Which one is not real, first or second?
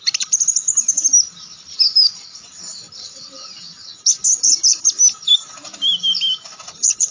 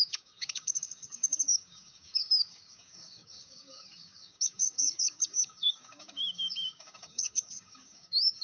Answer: second